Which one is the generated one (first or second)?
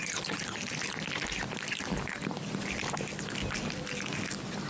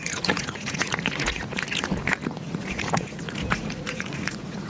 second